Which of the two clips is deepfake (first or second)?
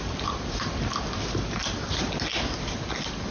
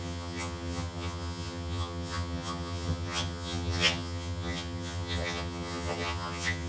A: second